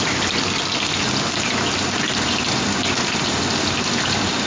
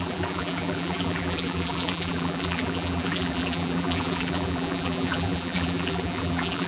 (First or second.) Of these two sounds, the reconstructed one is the second